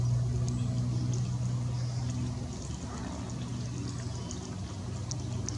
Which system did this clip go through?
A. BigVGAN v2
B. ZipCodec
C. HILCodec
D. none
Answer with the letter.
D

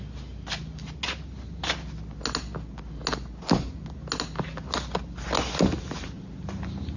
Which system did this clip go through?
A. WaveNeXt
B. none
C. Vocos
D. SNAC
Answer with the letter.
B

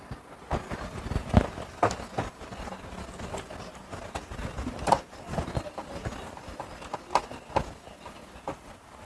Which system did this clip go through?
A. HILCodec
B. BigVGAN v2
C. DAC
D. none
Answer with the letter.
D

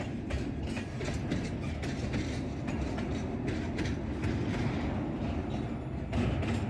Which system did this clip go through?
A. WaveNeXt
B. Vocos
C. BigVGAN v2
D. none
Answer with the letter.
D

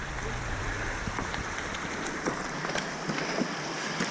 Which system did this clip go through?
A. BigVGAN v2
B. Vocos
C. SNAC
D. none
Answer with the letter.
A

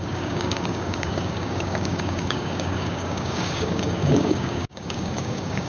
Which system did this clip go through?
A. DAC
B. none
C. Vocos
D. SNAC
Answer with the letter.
A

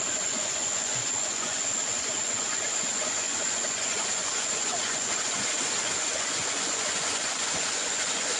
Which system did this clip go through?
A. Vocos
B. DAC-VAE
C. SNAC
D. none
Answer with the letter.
A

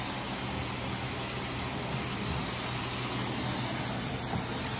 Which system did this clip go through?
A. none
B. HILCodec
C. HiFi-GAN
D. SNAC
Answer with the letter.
A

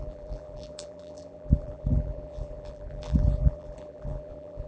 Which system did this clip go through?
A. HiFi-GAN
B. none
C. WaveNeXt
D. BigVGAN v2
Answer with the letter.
D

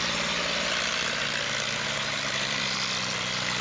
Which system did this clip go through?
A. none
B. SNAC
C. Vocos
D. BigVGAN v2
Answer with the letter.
D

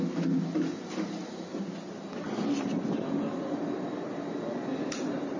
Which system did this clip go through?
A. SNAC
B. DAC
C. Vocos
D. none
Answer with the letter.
D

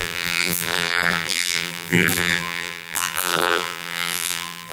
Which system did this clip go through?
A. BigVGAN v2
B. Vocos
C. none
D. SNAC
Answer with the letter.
A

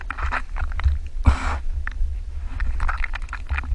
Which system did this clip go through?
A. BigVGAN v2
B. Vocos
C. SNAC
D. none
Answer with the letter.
D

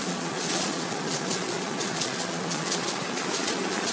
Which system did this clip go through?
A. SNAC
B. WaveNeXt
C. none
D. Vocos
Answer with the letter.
D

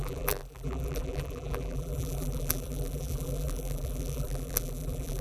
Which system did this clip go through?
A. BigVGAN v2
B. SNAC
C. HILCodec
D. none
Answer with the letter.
A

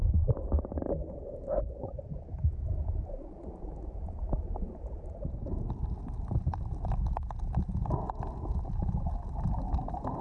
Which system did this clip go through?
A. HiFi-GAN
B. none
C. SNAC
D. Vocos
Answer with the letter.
B